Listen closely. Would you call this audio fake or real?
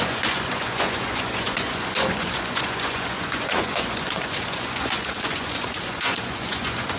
fake